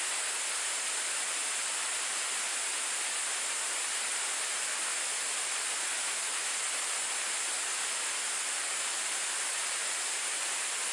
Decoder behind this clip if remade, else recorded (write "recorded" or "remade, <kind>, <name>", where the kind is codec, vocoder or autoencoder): recorded